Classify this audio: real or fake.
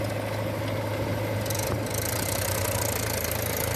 real